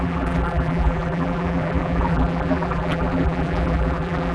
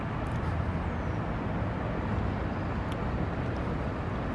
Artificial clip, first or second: first